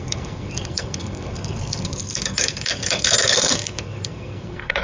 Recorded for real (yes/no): no